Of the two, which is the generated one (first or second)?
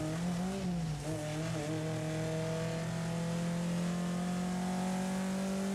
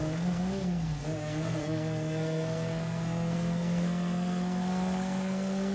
second